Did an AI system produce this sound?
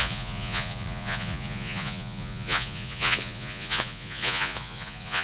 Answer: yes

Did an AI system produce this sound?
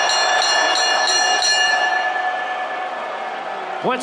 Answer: no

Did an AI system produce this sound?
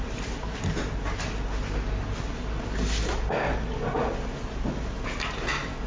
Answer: no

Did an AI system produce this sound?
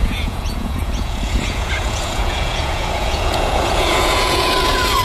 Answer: yes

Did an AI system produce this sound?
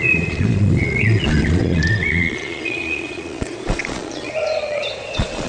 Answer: yes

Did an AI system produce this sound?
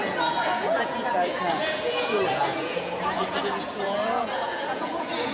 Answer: yes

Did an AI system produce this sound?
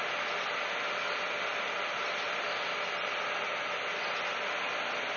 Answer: no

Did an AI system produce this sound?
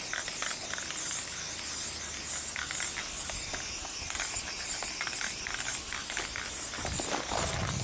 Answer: no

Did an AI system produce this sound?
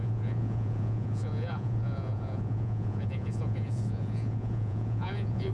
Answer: yes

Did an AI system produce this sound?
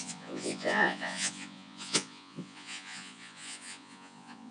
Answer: yes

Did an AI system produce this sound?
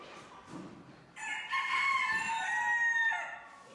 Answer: no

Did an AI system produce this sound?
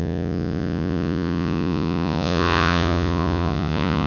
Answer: yes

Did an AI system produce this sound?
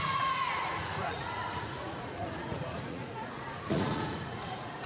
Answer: yes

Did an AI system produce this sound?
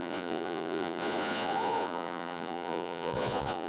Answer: yes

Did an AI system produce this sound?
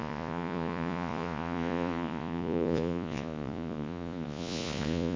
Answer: yes